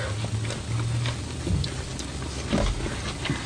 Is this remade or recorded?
recorded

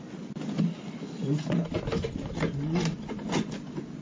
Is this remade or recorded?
recorded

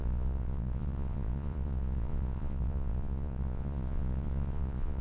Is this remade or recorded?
remade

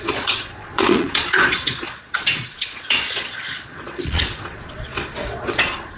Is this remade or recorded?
remade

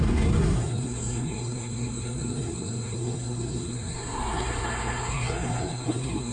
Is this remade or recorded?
remade